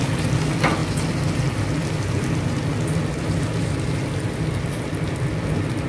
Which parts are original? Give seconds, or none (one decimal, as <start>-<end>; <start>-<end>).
0.0-5.9